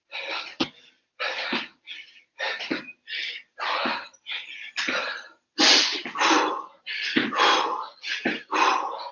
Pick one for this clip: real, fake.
real